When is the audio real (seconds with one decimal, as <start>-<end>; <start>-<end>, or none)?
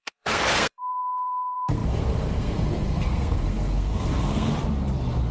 4.5-5.3